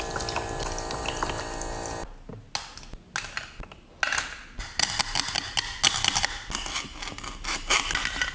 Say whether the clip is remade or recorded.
recorded